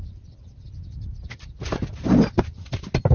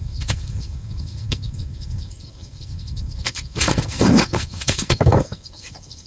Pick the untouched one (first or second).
first